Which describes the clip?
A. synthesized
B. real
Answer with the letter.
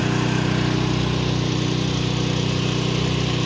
B